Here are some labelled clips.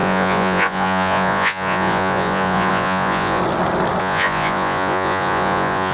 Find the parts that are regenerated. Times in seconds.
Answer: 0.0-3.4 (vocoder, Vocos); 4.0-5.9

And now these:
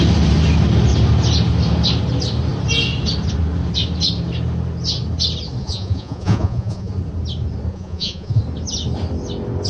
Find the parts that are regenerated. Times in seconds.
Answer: 5.6-6.9 (vocoder, Vocos); 7.7-8.4

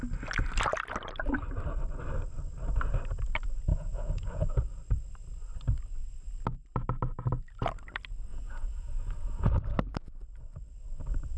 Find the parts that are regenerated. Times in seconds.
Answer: 3.7-4.6 (vocoder, Vocos); 8.3-9.5

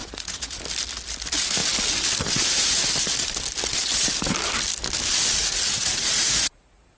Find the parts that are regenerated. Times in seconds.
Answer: 0.0-0.6 (vocoder, Vocos); 5.4-7.0

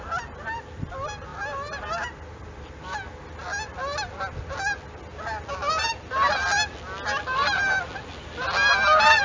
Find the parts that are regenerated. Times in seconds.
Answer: none

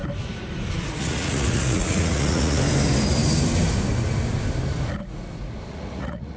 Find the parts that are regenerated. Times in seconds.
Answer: 1.0-2.6 (vocoder, Vocos); 5.7-6.4